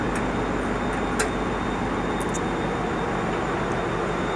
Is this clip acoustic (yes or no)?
yes